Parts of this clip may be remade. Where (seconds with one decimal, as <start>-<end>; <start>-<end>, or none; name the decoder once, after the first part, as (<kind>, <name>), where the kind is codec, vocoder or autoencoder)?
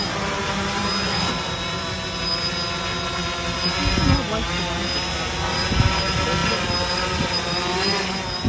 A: none